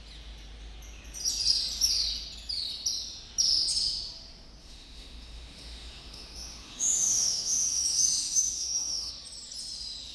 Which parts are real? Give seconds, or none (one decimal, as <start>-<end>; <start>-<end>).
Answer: 0.0-4.6; 9.1-10.1